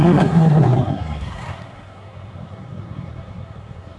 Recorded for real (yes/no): no